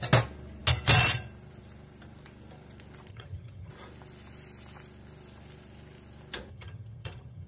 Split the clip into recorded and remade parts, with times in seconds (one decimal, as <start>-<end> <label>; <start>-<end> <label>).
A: 0.0-3.1 recorded; 3.1-3.7 remade; 3.7-6.5 recorded; 6.5-7.5 remade